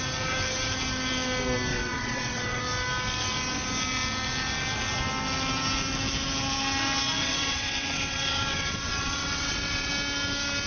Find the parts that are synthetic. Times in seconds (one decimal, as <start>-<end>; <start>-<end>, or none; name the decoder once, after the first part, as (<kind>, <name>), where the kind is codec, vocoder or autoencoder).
1.7-2.6 (vocoder, WaveNeXt); 7.2-9.9